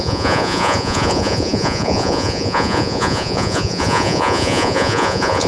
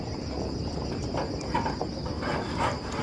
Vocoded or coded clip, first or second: first